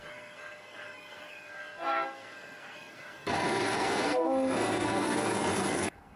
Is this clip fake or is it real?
fake